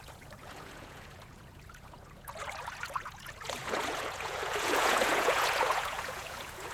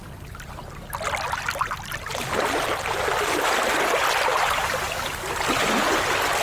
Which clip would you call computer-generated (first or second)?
first